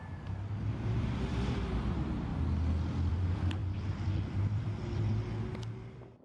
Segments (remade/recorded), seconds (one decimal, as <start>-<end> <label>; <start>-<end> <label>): 0.0-2.3 remade; 2.3-3.1 recorded; 3.1-5.1 remade; 5.1-6.2 recorded